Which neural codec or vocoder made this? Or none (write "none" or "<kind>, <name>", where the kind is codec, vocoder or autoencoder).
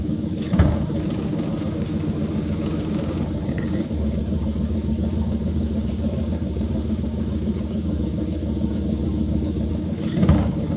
codec, DAC